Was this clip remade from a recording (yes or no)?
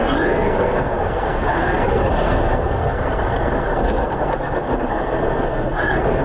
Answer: yes